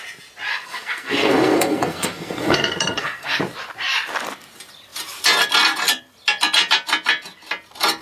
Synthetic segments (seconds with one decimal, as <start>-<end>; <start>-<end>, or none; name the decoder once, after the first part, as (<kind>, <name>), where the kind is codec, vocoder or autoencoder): 0.5-3.4 (codec, SNAC)